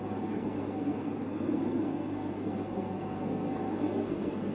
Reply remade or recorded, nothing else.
remade